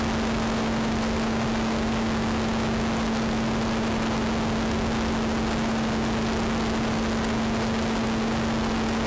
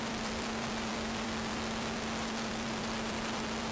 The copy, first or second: second